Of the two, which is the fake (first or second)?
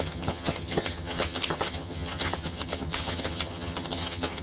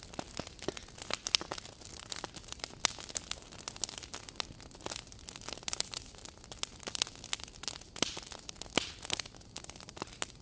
first